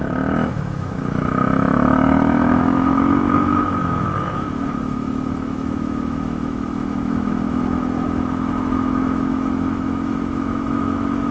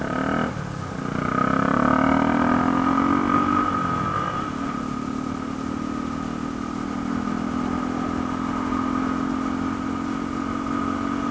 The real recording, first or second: second